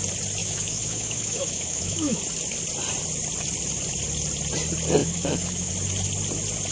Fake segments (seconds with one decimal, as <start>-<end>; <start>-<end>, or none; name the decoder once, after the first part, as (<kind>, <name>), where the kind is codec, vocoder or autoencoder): 0.4-2.2 (autoencoder, DAC-VAE); 5.0-5.7